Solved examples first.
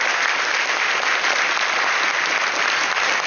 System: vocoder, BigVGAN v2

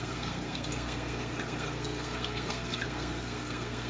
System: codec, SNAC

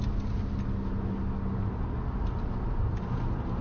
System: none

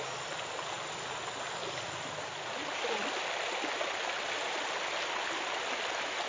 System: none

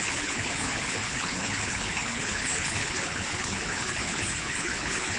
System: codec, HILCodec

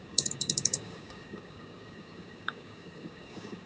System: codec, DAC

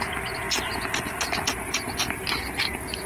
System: none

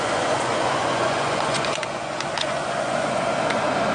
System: vocoder, Vocos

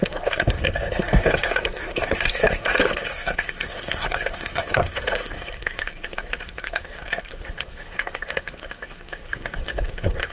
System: codec, SNAC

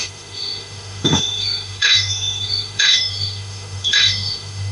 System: autoencoder, DAC-VAE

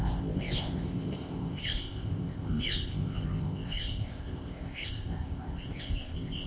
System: codec, ZipCodec